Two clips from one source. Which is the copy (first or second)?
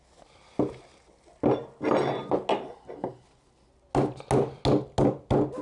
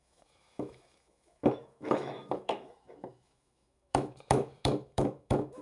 second